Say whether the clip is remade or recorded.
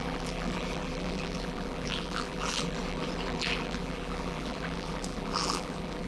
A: remade